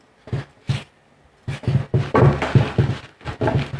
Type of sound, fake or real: real